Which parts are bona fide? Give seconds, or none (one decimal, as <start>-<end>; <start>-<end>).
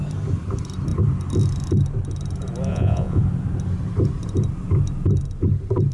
0.0-2.7; 3.2-5.9